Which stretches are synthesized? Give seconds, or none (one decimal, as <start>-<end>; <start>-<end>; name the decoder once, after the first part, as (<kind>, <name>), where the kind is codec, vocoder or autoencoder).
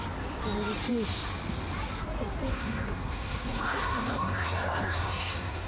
2.5-5.7 (codec, SNAC)